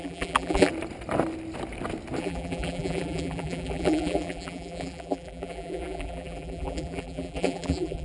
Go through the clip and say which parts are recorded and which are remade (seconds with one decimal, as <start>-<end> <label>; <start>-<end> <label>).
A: 0.0-0.7 remade; 0.7-2.2 recorded; 2.2-8.0 remade